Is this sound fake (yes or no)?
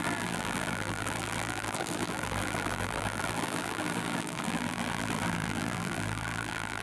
yes